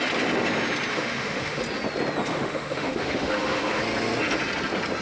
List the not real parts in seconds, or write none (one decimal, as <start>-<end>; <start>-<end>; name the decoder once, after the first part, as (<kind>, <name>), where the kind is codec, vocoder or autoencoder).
0.9-1.6 (autoencoder, DAC-VAE); 2.3-3.8